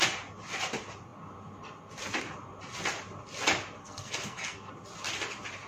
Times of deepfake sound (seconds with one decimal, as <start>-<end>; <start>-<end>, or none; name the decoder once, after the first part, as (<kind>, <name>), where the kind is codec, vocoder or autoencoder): 3.8-4.7 (codec, SNAC)